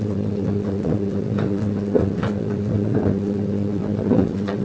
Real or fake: fake